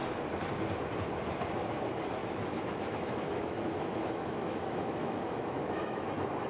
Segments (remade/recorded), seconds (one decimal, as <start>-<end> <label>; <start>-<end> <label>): 0.0-2.2 recorded; 2.2-6.1 remade; 6.1-6.5 recorded